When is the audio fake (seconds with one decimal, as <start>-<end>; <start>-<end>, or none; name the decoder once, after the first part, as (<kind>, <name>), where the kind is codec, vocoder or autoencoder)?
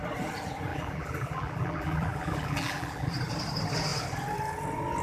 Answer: 0.7-3.1 (vocoder, BigVGAN v2)